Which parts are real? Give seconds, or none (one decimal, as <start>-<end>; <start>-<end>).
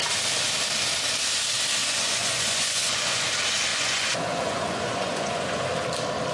0.0-1.8; 3.3-3.7; 5.7-6.3